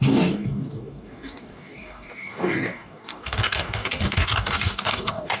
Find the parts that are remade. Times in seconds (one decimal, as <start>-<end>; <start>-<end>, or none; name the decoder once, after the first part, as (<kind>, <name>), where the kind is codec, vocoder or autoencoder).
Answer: 0.0-5.4 (codec, DAC)